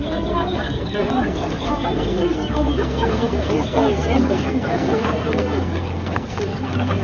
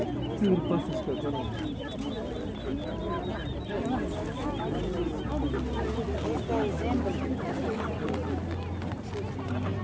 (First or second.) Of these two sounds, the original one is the second